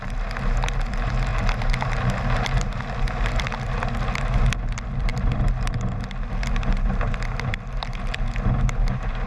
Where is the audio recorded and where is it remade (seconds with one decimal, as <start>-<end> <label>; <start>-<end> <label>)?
0.0-9.3 recorded